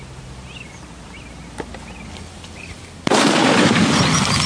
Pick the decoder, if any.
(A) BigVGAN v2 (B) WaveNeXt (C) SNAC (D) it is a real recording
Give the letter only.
D